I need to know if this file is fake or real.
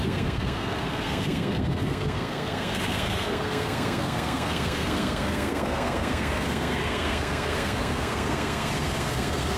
fake